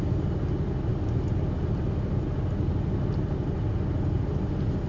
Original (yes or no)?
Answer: yes